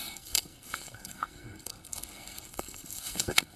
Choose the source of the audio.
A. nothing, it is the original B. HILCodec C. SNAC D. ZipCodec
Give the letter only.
C